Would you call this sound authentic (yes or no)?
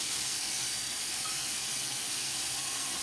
no